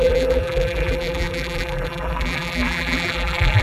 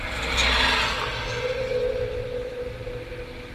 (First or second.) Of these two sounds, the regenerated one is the first